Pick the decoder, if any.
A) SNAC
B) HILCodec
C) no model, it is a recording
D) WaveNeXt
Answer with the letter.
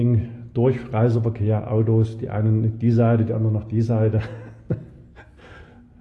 C